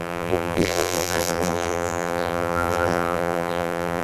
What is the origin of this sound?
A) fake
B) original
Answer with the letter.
A